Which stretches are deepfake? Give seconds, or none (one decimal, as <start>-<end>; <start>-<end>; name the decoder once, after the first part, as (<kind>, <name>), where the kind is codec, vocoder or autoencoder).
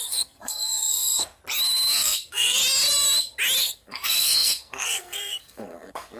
0.0-1.4 (codec, SNAC); 1.9-2.6; 3.6-6.2